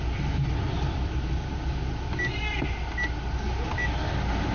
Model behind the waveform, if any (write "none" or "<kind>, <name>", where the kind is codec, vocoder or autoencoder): none